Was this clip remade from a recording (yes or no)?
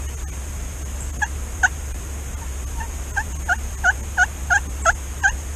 no